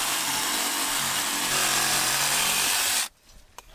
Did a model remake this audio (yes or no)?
yes